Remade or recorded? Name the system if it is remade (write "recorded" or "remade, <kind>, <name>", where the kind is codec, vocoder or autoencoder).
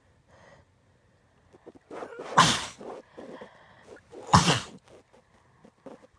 recorded